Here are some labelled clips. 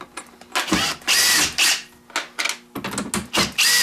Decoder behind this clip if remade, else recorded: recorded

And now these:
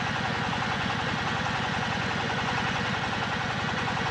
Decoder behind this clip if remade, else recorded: remade, vocoder, Vocos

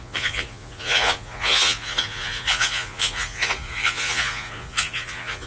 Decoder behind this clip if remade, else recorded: remade, vocoder, Vocos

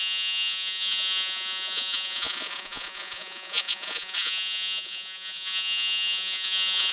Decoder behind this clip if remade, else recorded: remade, vocoder, Vocos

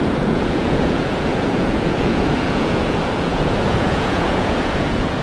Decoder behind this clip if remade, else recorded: remade, vocoder, Vocos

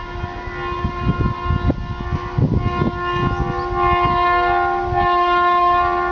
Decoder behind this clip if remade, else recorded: recorded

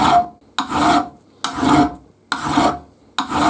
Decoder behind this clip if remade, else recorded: recorded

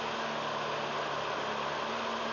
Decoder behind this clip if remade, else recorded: recorded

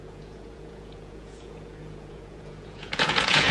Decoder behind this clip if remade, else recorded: remade, vocoder, Vocos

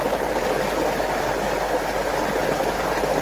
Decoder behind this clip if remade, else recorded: recorded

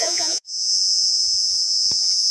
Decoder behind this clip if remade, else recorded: remade, vocoder, Vocos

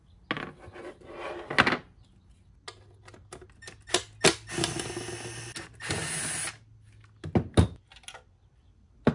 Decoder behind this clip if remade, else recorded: recorded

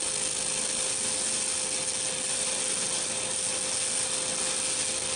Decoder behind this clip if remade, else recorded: recorded